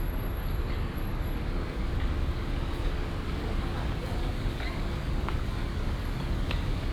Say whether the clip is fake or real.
fake